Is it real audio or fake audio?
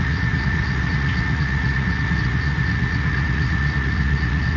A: fake